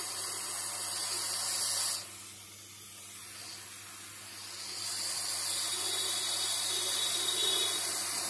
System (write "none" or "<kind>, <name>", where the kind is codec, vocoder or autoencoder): none